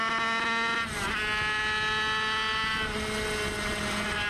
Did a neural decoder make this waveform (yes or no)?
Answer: no